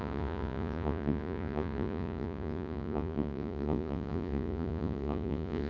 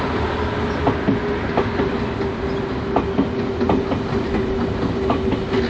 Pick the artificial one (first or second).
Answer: first